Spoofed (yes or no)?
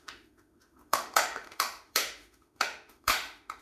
yes